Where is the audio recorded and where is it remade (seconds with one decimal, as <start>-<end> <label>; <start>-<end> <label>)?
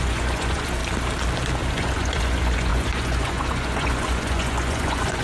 0.0-0.8 remade; 0.8-1.7 recorded; 1.7-5.2 remade